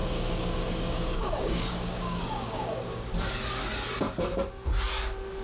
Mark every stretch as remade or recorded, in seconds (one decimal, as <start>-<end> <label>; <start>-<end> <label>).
0.0-3.2 remade; 3.2-5.4 recorded